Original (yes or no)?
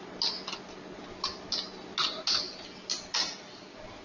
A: yes